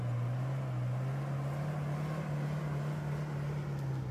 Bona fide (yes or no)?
yes